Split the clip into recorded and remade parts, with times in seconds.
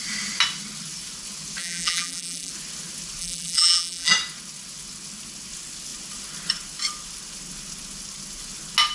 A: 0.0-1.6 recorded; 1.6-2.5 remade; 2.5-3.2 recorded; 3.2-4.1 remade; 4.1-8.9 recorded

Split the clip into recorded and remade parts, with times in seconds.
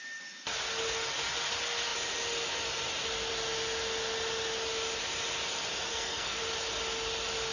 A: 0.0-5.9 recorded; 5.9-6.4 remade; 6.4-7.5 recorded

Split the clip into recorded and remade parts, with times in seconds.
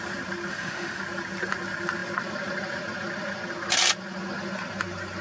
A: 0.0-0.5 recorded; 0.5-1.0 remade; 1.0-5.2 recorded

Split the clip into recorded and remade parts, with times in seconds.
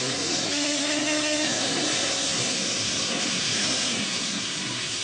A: 0.0-5.0 remade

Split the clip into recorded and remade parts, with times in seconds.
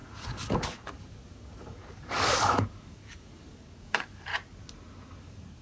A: 0.0-4.3 remade; 4.3-5.1 recorded; 5.1-5.6 remade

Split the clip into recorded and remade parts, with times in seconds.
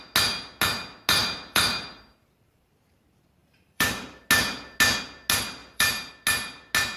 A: 0.0-1.2 recorded; 1.2-2.8 remade; 2.8-3.4 recorded; 3.4-4.2 remade; 4.2-5.6 recorded; 5.6-6.1 remade; 6.1-7.0 recorded